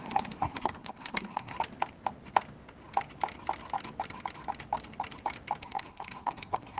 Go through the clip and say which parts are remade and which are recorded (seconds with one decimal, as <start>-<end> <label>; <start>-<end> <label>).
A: 0.0-1.5 remade; 1.5-5.6 recorded; 5.6-6.8 remade